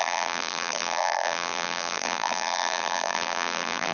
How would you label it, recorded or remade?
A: remade